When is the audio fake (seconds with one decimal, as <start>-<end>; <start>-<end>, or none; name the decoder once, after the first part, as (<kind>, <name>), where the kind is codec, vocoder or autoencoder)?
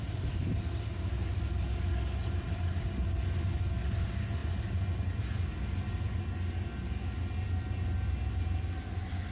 none